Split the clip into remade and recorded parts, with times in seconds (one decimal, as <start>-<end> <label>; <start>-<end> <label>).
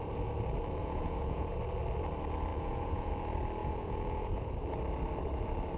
0.0-0.8 recorded; 0.8-1.5 remade; 1.5-2.5 recorded; 2.5-3.1 remade; 3.1-3.6 recorded; 3.6-4.5 remade; 4.5-5.8 recorded